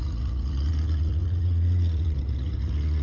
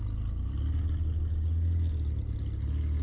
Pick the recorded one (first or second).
second